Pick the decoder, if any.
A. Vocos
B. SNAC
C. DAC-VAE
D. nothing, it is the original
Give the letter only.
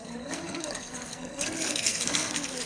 B